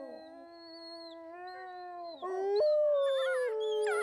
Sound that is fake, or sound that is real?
real